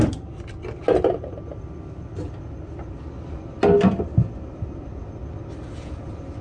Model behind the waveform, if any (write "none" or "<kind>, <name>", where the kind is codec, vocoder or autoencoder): none